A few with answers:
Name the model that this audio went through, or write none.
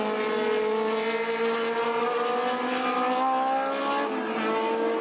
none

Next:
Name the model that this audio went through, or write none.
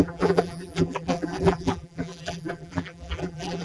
vocoder, BigVGAN v2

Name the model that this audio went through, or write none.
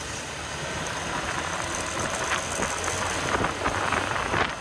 none